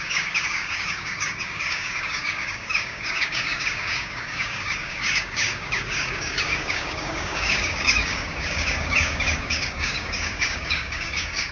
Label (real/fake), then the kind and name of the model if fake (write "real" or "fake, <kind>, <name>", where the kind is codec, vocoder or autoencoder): fake, codec, DAC